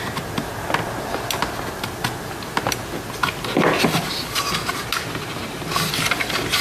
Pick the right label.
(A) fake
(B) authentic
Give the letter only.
B